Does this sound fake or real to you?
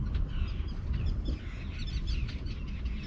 real